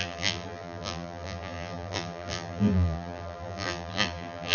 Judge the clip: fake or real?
fake